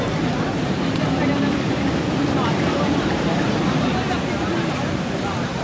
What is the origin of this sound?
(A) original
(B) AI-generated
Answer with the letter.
B